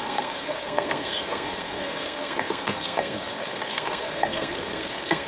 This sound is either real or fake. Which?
fake